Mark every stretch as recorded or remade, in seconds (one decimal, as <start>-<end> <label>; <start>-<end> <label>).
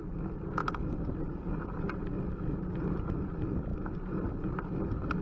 0.0-5.2 recorded